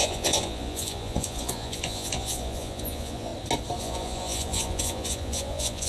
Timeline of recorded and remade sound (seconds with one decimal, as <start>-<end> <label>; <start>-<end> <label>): 0.0-3.3 remade; 3.3-3.8 recorded; 3.8-5.9 remade